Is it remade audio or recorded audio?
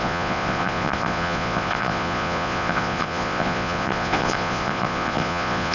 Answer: remade